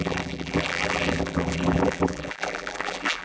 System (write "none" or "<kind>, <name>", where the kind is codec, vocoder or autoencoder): vocoder, BigVGAN v2